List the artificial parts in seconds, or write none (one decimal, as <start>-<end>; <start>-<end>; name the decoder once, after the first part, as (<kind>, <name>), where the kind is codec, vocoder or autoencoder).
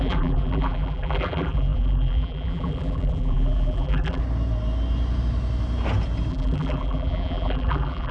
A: 0.0-4.2 (vocoder, BigVGAN v2); 6.3-8.1